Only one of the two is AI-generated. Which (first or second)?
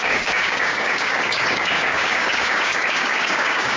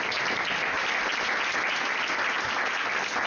first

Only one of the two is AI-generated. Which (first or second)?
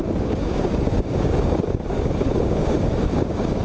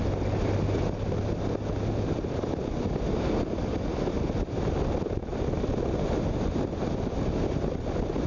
first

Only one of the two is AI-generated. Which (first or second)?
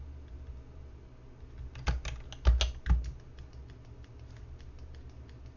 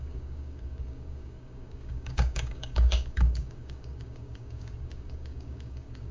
second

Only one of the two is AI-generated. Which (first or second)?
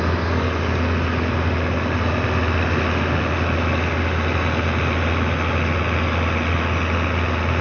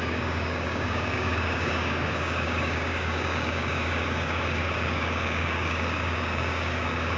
second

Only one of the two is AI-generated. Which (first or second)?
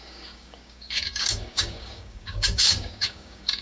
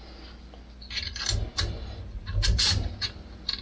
first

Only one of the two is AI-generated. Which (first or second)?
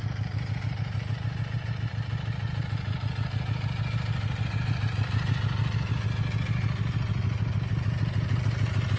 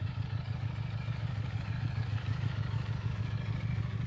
second